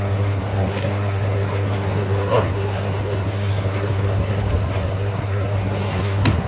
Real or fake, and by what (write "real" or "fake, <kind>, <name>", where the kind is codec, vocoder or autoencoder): fake, codec, SNAC